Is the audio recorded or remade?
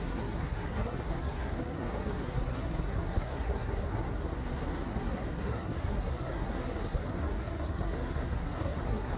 remade